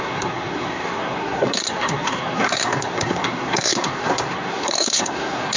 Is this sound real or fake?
fake